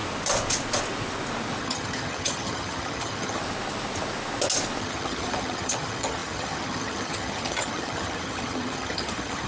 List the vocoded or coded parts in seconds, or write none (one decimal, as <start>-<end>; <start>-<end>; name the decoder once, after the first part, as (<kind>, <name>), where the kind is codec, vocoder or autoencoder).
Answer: 1.6-3.4 (vocoder, HiFi-GAN); 4.8-9.5